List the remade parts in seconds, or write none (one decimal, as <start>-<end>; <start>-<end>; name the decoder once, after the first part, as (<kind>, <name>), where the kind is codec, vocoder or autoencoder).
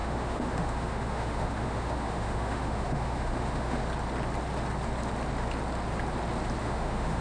0.0-3.8 (autoencoder, DAC-VAE); 6.6-7.2